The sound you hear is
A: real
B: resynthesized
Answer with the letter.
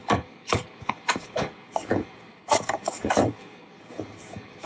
B